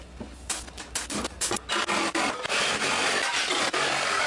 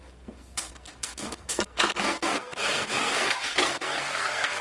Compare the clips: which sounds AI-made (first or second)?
second